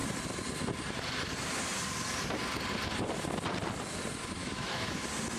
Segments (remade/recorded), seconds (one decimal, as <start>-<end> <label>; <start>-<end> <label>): 0.0-4.4 recorded; 4.4-5.0 remade; 5.0-5.4 recorded